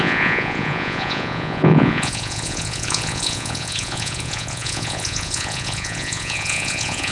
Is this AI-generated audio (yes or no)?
yes